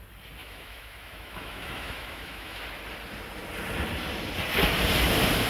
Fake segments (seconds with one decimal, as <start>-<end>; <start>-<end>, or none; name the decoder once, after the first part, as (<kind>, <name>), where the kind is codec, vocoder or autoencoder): 0.4-2.6 (autoencoder, DAC-VAE)